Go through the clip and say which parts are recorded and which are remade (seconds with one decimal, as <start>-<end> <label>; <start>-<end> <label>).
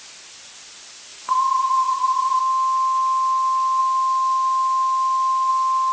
0.0-1.1 recorded; 1.1-2.4 remade; 2.4-5.9 recorded